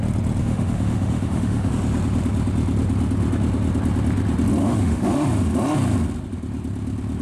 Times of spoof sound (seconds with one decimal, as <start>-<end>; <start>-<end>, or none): 0.4-1.7; 4.6-5.3